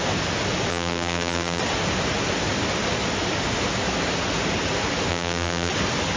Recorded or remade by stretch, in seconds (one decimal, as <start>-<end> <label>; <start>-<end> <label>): 0.0-0.7 recorded; 0.7-1.6 remade; 1.6-5.1 recorded; 5.1-5.7 remade; 5.7-6.2 recorded

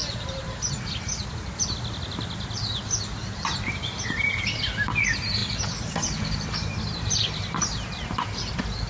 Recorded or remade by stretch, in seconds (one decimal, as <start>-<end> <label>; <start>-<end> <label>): 0.0-0.7 remade; 0.7-3.2 recorded; 3.2-4.0 remade; 4.0-5.4 recorded; 5.4-8.2 remade; 8.2-8.9 recorded

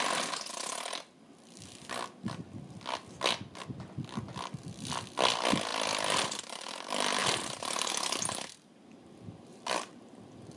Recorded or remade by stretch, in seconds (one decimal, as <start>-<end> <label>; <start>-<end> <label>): 0.0-7.2 recorded; 7.2-7.9 remade; 7.9-9.5 recorded; 9.5-10.2 remade; 10.2-10.6 recorded

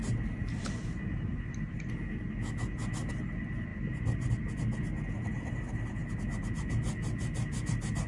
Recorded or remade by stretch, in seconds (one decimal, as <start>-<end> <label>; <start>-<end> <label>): 0.0-1.9 remade; 1.9-3.7 recorded; 3.7-4.3 remade; 4.3-8.1 recorded

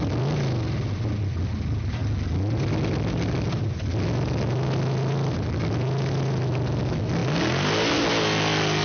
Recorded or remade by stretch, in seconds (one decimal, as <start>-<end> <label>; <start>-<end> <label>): 0.0-8.8 recorded

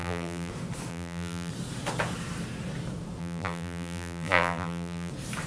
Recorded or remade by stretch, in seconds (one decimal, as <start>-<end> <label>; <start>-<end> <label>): 0.0-0.5 remade; 0.5-0.9 recorded; 0.9-1.5 remade; 1.5-3.2 recorded; 3.2-5.1 remade; 5.1-5.5 recorded

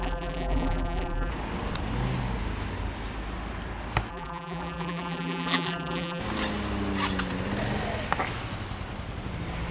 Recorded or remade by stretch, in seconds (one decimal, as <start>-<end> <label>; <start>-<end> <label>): 0.0-1.3 remade; 1.3-4.1 recorded; 4.1-6.2 remade; 6.2-9.7 recorded